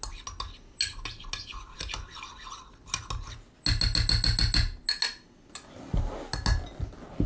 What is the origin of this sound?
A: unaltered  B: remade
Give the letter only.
A